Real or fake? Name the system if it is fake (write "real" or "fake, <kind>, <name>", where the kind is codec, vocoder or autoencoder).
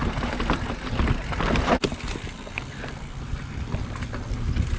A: real